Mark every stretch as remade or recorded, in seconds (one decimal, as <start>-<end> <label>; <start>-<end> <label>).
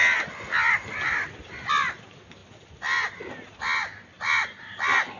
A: 0.0-5.2 recorded